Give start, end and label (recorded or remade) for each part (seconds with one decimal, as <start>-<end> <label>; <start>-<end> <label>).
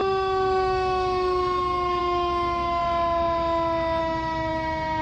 0.0-2.8 remade; 2.8-4.0 recorded; 4.0-5.0 remade